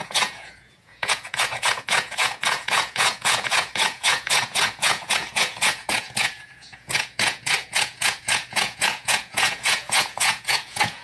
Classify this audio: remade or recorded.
remade